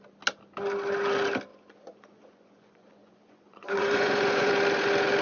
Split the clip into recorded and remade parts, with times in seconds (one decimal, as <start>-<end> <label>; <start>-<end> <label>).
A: 0.0-1.5 recorded; 1.5-4.5 remade; 4.5-5.2 recorded